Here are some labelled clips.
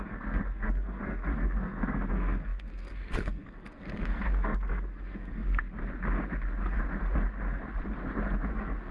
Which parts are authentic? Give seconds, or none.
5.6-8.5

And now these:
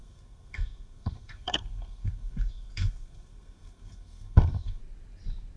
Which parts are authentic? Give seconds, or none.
4.8-5.6

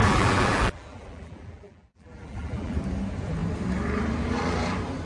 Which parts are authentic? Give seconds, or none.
2.8-5.0

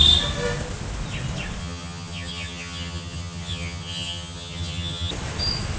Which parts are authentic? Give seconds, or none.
0.0-1.6; 5.1-5.8

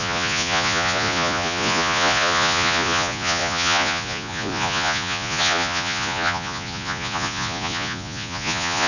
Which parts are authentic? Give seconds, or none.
none

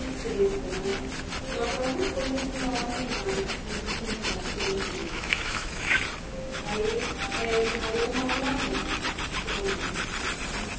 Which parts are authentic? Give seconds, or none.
0.0-5.0; 6.0-10.8